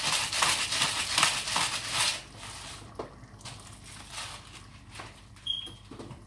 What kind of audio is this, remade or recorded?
recorded